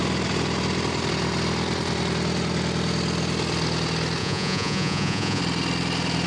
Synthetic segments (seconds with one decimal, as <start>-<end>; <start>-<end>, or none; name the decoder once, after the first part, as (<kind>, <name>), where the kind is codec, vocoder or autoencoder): 4.2-5.4 (vocoder, Vocos)